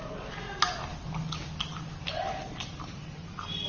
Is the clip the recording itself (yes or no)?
yes